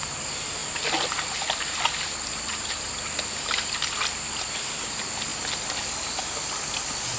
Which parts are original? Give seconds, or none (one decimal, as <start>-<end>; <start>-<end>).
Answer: 0.0-7.2